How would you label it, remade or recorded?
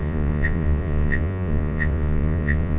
remade